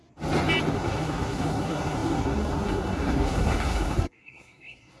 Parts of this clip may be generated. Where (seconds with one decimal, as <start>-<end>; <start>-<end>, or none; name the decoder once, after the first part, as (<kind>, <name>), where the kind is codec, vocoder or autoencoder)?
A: 0.7-5.0 (codec, SNAC)